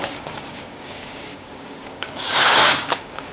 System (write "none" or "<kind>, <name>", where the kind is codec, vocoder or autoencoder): codec, DAC